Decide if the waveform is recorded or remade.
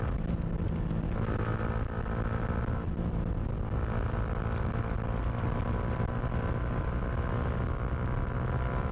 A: recorded